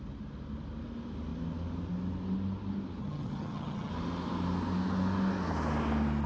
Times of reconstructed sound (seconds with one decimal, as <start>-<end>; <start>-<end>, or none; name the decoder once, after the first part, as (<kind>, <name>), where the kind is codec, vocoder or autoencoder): 3.0-3.9 (vocoder, HiFi-GAN)